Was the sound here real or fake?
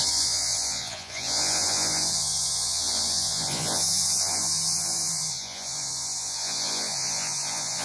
fake